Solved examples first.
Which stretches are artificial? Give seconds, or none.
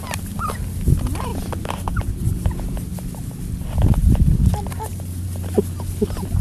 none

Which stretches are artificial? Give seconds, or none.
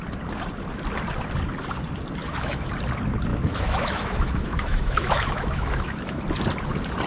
2.2-2.7 (autoencoder, DAC-VAE); 3.3-6.2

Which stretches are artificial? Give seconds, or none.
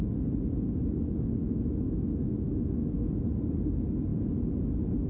1.4-3.1 (autoencoder, DAC-VAE)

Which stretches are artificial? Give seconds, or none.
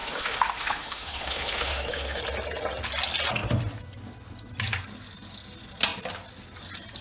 0.0-2.2 (autoencoder, DAC-VAE)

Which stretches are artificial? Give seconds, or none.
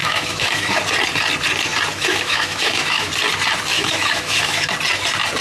0.0-0.8 (autoencoder, DAC-VAE); 1.9-3.1; 3.7-4.7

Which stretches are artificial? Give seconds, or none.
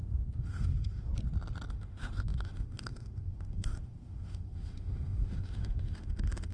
0.0-1.1 (autoencoder, DAC-VAE); 1.7-6.5